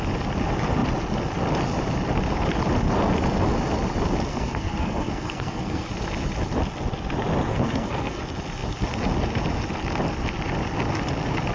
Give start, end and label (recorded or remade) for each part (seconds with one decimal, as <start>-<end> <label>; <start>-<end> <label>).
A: 0.0-4.3 recorded; 4.3-5.9 remade; 5.9-7.5 recorded; 7.5-8.2 remade; 8.2-11.5 recorded